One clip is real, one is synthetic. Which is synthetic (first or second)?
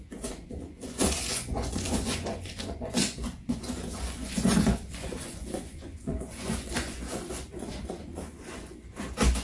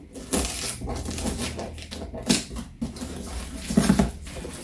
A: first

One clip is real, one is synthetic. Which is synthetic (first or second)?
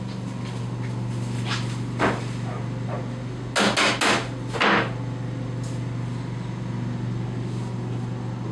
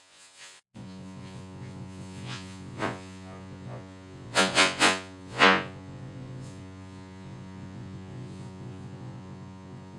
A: second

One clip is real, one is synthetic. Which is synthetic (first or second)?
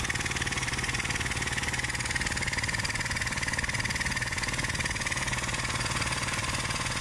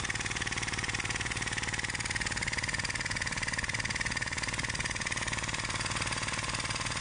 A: first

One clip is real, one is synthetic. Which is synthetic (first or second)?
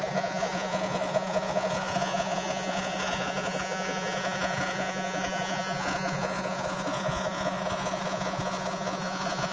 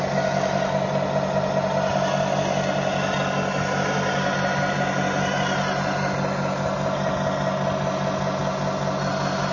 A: first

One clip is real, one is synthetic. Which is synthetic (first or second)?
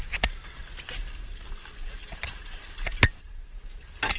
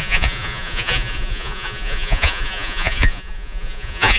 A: second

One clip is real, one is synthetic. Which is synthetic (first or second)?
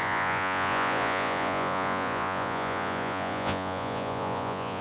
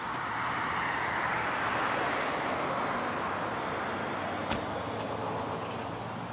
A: first